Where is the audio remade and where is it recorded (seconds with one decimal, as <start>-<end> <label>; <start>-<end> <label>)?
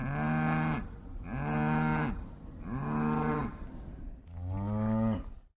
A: 0.0-5.6 recorded